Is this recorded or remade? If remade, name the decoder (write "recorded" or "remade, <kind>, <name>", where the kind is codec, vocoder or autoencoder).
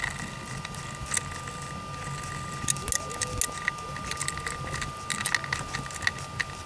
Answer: recorded